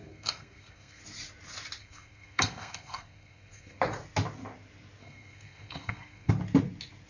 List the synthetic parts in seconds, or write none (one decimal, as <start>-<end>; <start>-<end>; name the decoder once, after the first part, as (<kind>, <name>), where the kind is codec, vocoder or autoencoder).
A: 0.0-1.0 (codec, SNAC); 1.8-3.8; 5.0-6.3